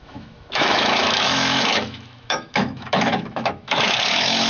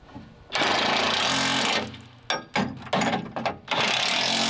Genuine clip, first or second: second